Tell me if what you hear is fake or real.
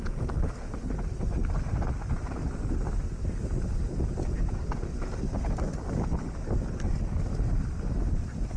real